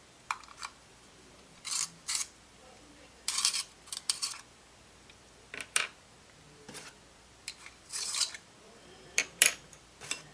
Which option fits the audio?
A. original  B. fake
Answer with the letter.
B